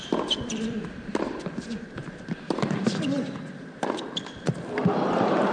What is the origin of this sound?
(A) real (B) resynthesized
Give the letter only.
B